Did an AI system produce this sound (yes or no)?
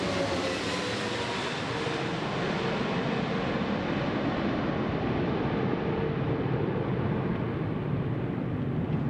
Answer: no